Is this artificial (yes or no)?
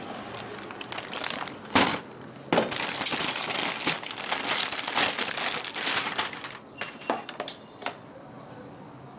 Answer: no